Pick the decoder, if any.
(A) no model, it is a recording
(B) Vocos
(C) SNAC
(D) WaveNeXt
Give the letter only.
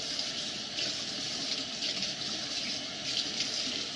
A